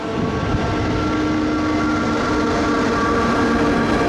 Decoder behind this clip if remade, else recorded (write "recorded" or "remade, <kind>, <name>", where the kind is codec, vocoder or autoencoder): recorded